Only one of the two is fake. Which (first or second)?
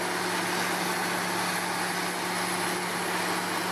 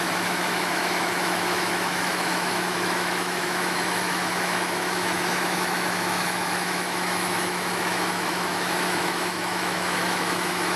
second